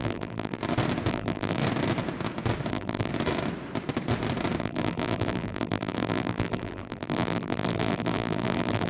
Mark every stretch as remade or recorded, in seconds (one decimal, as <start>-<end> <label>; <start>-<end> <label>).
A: 0.0-0.6 remade; 0.6-1.1 recorded; 1.1-1.6 remade; 1.6-2.7 recorded; 2.7-3.1 remade; 3.1-4.6 recorded; 4.6-8.9 remade